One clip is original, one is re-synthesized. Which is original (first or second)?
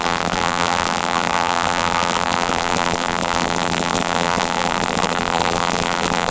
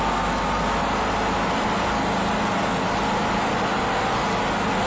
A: second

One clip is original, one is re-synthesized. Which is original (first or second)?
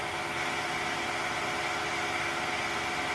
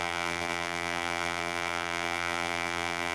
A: first